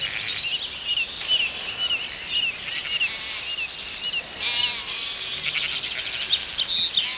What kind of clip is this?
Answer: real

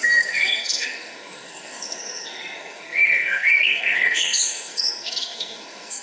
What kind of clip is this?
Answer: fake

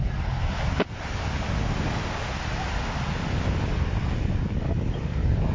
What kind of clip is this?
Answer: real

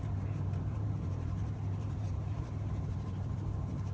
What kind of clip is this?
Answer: fake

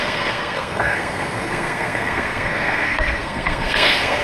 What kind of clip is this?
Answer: fake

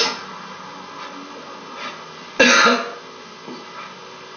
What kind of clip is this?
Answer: real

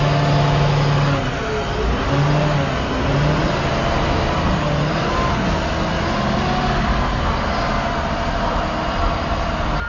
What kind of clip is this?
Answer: real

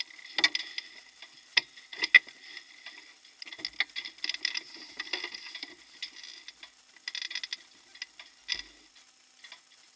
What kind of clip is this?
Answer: real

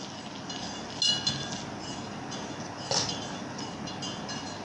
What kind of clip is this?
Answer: real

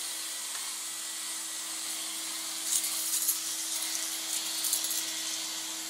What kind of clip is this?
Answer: real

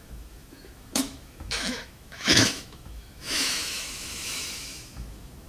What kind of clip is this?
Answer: fake